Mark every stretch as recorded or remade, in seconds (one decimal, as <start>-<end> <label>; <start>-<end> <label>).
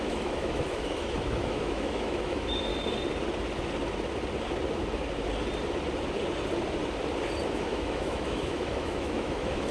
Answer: 0.0-2.7 remade; 2.7-7.5 recorded; 7.5-9.7 remade